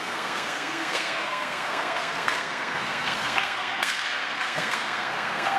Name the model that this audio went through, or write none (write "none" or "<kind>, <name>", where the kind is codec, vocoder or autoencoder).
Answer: codec, SNAC